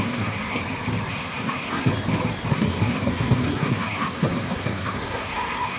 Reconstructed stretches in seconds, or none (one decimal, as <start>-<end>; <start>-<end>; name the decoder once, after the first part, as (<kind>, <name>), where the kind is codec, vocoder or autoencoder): 0.0-0.6 (codec, SNAC); 1.1-1.9; 2.5-5.8